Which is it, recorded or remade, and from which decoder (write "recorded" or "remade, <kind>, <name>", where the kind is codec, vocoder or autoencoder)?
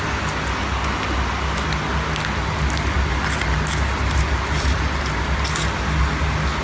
recorded